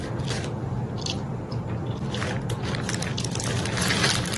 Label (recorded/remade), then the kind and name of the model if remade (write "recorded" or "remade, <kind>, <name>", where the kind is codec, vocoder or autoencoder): recorded